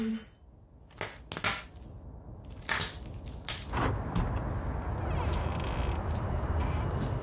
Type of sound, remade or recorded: recorded